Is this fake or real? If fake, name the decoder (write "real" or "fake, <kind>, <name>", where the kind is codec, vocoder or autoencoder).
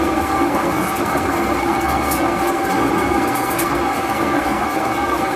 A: fake, codec, SNAC